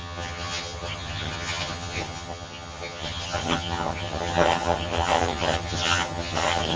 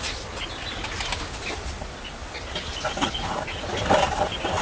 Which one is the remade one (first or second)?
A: first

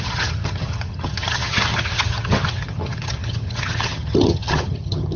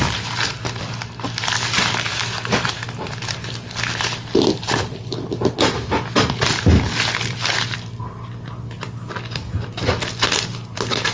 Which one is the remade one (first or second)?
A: first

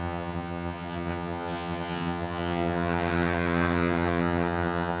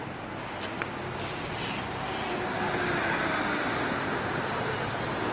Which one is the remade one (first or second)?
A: first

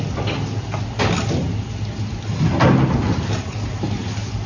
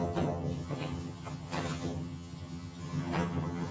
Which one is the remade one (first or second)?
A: second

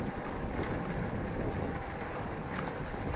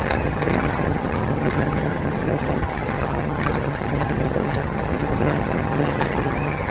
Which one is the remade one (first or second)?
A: second